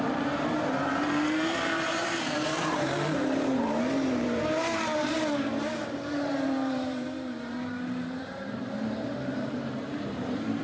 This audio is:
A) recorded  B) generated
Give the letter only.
B